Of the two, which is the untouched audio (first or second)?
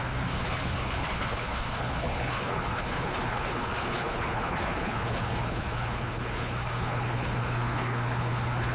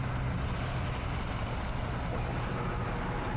second